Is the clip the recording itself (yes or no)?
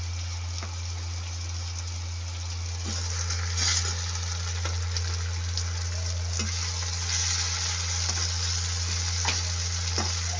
yes